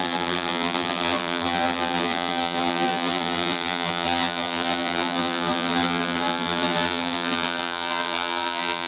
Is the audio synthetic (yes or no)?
yes